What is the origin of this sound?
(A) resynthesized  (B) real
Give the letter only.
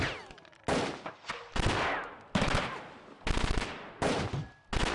B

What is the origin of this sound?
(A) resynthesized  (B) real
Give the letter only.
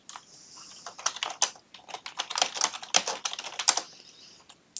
B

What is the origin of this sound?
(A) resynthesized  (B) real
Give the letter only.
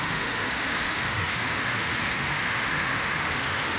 A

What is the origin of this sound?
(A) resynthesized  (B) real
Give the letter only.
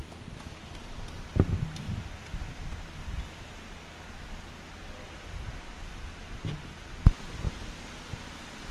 B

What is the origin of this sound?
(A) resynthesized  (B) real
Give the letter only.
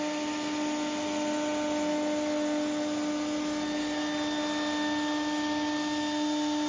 B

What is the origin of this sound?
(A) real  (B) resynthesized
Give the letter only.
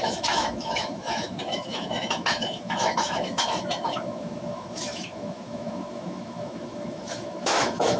B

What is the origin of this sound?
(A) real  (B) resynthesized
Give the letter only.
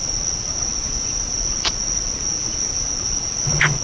B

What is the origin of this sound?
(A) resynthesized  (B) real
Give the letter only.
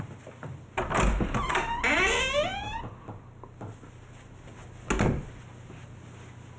B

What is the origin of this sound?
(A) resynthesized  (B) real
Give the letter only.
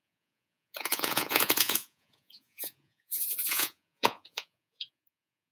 A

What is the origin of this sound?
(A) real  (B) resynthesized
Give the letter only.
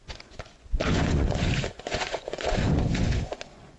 B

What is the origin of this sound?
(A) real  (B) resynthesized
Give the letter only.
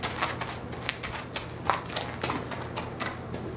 A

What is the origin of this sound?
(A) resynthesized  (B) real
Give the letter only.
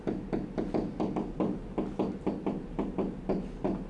B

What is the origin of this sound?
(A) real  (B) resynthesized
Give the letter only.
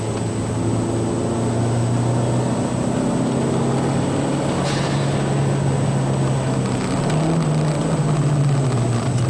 A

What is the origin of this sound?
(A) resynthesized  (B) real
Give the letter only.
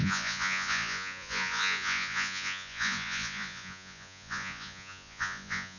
A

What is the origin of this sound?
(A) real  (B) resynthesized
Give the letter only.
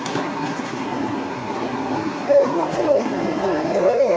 B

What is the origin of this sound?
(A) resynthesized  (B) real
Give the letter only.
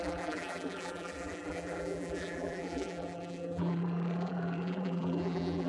A